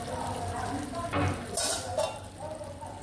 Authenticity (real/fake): real